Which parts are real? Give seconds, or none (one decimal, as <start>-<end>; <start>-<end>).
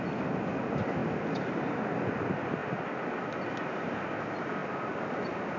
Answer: 0.0-5.6